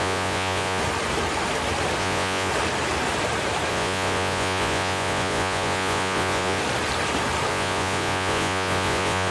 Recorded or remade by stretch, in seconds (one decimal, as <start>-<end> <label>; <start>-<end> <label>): 0.0-0.8 remade; 0.8-2.0 recorded; 2.0-2.5 remade; 2.5-3.7 recorded; 3.7-6.6 remade; 6.6-7.5 recorded; 7.5-9.3 remade